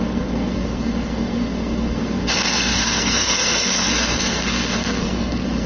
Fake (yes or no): yes